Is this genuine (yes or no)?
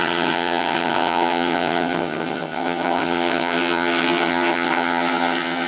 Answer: no